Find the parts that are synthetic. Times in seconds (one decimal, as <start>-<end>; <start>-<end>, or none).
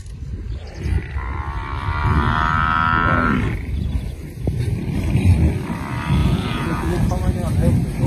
6.2-6.8